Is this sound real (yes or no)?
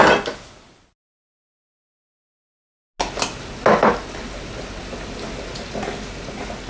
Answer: yes